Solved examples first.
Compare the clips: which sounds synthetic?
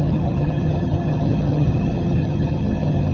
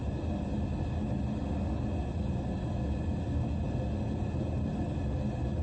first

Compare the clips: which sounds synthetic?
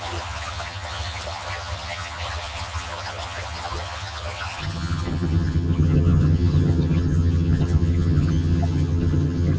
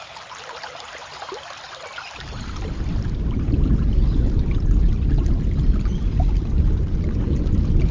first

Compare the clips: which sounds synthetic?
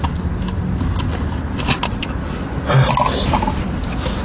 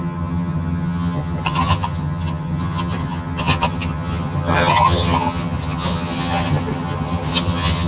second